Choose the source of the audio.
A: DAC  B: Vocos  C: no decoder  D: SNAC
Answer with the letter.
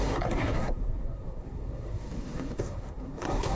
D